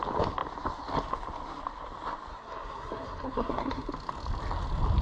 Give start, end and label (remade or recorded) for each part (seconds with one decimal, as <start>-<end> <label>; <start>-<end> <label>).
0.0-2.3 recorded; 2.3-3.9 remade; 3.9-5.0 recorded